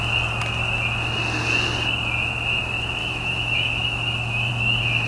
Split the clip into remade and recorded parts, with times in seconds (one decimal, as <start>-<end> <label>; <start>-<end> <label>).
0.0-3.0 recorded; 3.0-4.5 remade; 4.5-5.1 recorded